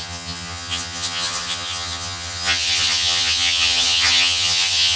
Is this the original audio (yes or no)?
no